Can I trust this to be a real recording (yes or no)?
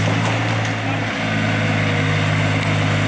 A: yes